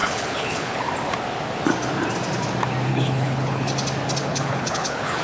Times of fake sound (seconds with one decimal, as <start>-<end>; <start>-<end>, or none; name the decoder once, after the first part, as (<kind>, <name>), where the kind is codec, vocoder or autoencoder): 0.0-0.9 (codec, HILCodec); 2.9-3.7; 4.2-5.2